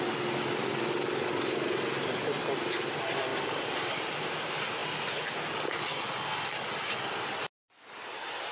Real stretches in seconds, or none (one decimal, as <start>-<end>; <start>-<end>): 0.0-8.5